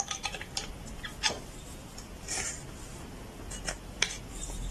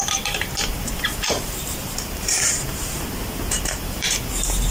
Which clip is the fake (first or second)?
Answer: second